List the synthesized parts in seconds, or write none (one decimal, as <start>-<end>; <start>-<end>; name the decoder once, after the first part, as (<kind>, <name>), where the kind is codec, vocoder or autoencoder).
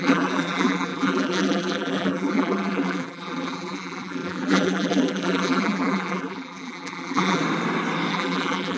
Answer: 0.0-7.4 (vocoder, BigVGAN v2); 8.1-8.8